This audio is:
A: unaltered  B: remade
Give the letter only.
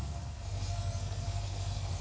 B